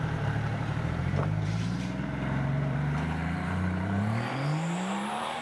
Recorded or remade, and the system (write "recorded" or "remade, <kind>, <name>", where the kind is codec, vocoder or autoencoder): remade, vocoder, BigVGAN v2